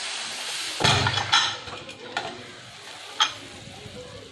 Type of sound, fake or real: real